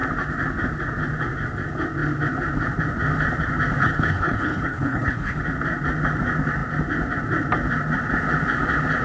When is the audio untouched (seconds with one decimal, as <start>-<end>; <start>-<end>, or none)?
0.0-3.8; 5.4-9.0